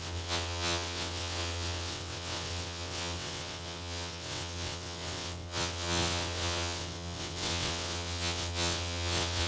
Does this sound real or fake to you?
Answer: fake